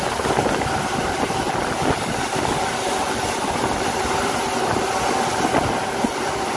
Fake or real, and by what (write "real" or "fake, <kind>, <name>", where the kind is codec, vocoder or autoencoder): real